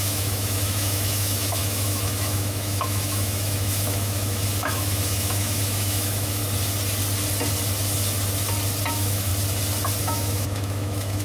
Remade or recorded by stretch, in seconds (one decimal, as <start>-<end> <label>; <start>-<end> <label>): 0.0-6.4 remade; 6.4-8.9 recorded; 8.9-9.3 remade; 9.3-10.0 recorded; 10.0-11.2 remade